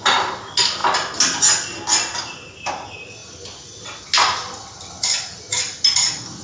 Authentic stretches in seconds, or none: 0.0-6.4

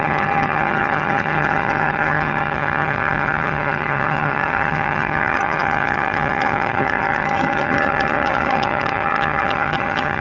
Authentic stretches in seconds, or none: none

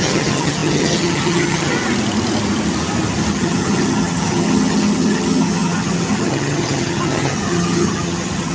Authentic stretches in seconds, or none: 1.7-3.3

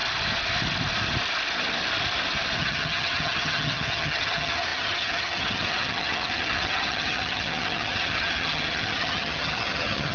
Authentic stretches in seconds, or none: 0.0-2.6

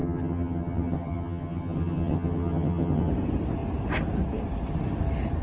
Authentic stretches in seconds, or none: 3.1-5.4

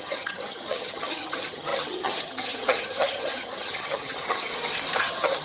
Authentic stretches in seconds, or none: 4.5-5.0

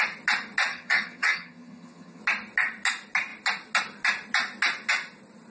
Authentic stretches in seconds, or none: 0.0-0.7; 2.2-5.5

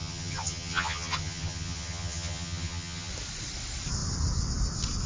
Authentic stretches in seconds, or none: 3.1-5.1